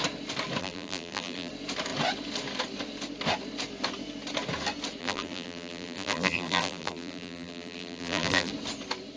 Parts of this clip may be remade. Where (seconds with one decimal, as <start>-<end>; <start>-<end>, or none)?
0.6-1.5; 5.0-8.5